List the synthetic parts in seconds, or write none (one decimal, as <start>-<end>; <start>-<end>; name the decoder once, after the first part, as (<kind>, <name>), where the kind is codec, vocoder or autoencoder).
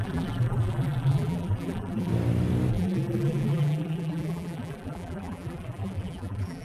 0.0-2.1 (vocoder, BigVGAN v2); 2.7-6.6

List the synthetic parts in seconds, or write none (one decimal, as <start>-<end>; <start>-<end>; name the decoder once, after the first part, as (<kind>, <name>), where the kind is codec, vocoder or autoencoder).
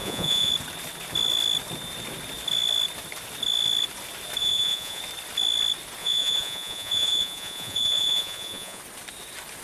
0.0-0.5 (vocoder, Vocos); 4.4-5.0; 6.0-8.8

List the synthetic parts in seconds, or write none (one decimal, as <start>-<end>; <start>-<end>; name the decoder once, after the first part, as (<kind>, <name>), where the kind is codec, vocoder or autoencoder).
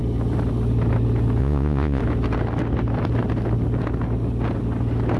1.4-2.0 (vocoder, Vocos)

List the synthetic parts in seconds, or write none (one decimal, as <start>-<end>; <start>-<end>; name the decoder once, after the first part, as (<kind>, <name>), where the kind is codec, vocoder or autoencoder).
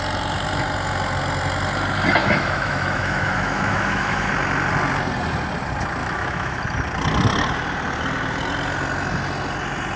2.2-4.3 (autoencoder, DAC-VAE); 6.0-6.6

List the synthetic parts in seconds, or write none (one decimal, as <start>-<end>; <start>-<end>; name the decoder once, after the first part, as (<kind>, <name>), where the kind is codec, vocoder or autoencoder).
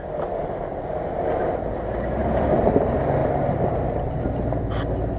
2.2-2.7 (vocoder, BigVGAN v2); 3.2-4.2